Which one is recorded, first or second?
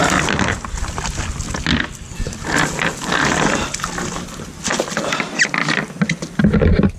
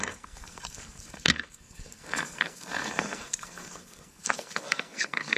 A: first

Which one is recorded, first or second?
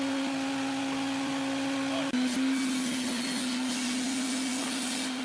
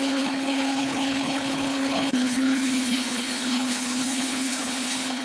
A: first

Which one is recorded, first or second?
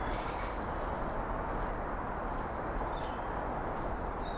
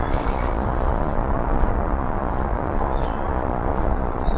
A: first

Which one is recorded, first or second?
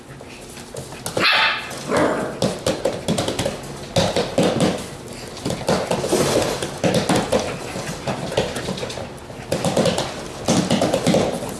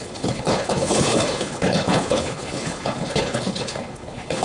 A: first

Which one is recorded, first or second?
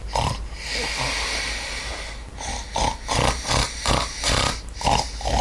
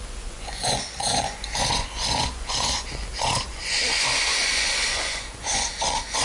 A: first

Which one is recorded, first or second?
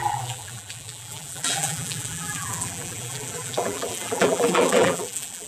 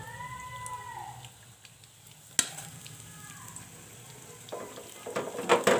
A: second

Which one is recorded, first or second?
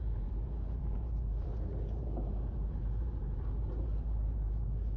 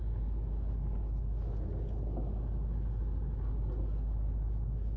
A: second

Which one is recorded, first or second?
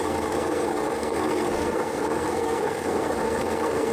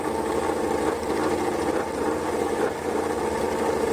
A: second